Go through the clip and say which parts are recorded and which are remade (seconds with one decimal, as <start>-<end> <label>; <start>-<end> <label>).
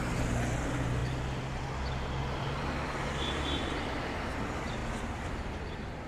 0.0-4.8 recorded; 4.8-5.6 remade; 5.6-6.1 recorded